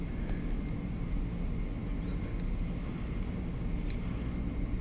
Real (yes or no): yes